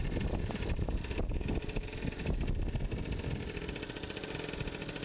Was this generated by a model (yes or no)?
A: no